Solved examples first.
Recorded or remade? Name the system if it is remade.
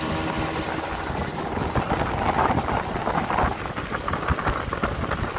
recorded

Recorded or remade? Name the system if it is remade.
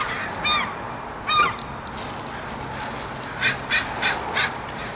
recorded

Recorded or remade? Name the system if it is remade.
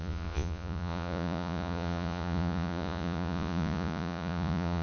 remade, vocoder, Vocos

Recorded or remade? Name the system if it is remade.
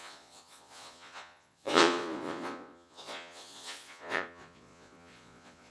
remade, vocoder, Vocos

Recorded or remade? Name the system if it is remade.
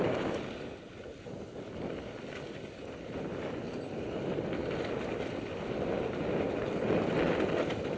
recorded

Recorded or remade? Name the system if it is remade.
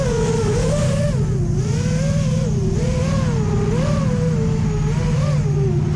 recorded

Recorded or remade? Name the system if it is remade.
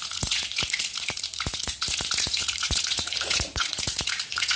remade, vocoder, Vocos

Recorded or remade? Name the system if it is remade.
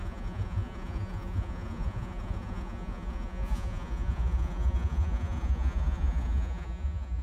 remade, vocoder, Vocos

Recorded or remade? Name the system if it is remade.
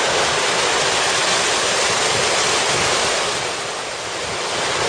recorded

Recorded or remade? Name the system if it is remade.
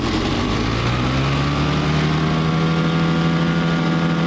recorded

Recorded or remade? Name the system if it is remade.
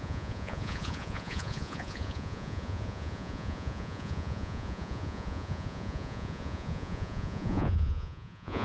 remade, vocoder, Vocos